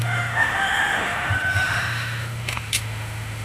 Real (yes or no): no